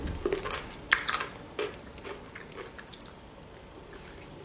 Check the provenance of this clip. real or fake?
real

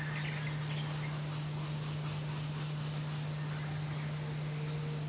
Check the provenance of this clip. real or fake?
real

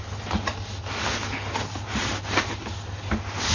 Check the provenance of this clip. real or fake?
real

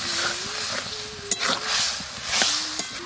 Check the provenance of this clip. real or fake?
real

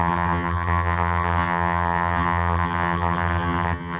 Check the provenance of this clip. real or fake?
fake